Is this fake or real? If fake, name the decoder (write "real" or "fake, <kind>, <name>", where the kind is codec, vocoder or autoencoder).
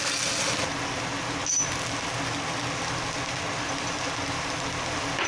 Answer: real